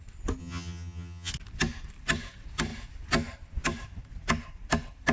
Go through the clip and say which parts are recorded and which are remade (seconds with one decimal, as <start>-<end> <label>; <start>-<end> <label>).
0.0-0.4 recorded; 0.4-1.3 remade; 1.3-5.1 recorded